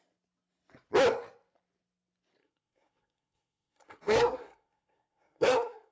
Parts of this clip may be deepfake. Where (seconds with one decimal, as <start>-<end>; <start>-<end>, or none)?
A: 2.4-5.9